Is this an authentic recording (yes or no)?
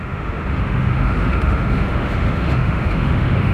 no